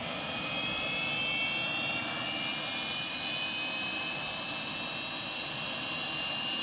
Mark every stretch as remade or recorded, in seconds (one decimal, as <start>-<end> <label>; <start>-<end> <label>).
0.0-6.6 recorded